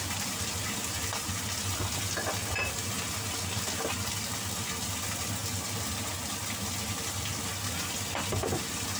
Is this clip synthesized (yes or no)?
no